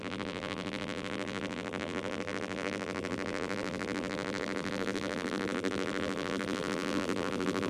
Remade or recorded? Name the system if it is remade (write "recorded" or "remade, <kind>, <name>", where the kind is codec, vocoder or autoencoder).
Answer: remade, vocoder, BigVGAN v2